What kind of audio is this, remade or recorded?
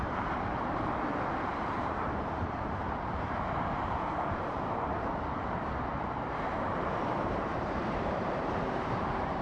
remade